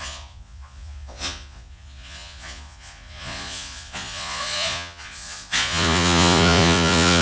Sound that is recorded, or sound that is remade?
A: remade